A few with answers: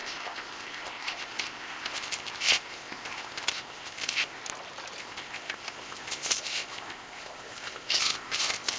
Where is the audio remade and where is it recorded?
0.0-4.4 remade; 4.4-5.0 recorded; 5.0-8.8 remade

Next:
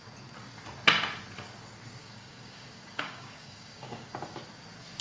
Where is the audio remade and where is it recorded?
0.0-2.0 recorded; 2.0-4.1 remade; 4.1-5.0 recorded